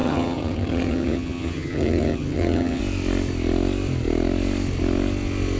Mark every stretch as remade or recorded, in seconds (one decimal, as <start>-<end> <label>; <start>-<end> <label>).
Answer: 0.0-2.8 remade; 2.8-5.6 recorded